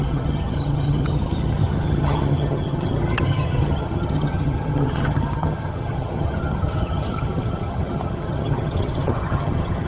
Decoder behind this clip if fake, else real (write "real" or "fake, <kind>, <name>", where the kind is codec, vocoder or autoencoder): fake, vocoder, HiFi-GAN